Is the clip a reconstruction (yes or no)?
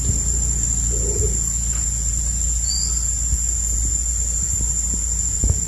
no